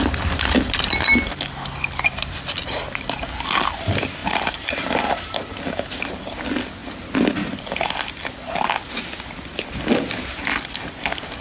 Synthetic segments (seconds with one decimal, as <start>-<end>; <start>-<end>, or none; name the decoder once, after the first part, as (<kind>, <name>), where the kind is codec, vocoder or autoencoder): 4.2-6.1 (vocoder, BigVGAN v2)